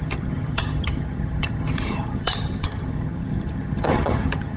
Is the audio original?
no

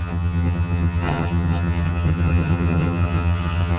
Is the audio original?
no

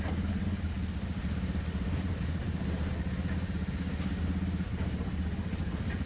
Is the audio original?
yes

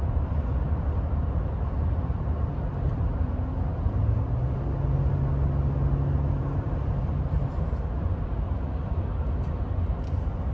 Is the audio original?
yes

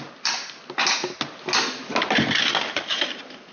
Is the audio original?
yes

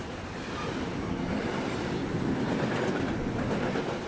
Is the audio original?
yes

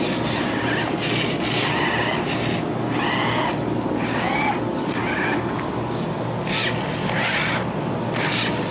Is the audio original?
yes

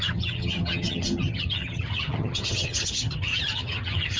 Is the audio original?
no